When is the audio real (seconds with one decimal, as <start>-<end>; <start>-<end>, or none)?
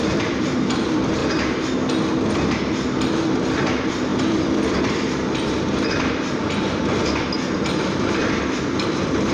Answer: 1.2-2.1